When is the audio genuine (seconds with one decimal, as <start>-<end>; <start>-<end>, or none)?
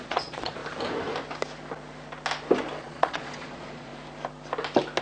0.6-2.8; 3.9-5.0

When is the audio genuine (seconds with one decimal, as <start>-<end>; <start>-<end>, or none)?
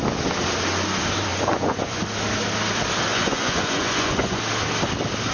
0.0-1.3; 2.0-3.1; 4.4-5.3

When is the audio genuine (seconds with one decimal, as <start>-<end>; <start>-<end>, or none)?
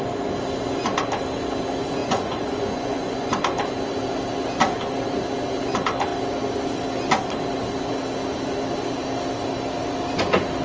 0.0-2.0; 3.3-10.6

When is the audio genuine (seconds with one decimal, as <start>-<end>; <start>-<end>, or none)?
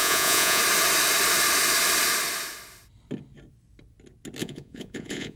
0.6-4.4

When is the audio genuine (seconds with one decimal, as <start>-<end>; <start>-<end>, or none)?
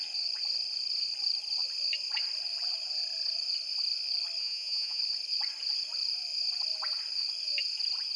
0.0-4.4; 5.0-8.2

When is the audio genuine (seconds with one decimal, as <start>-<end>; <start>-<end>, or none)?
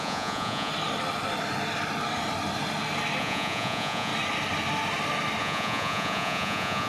0.7-3.2; 4.1-5.4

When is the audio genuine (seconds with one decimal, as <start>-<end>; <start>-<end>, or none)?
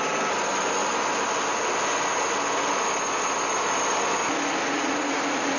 0.0-4.6